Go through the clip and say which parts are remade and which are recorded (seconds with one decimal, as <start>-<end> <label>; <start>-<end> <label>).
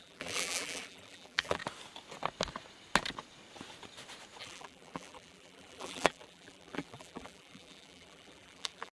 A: 0.0-1.6 remade; 1.6-4.4 recorded; 4.4-9.0 remade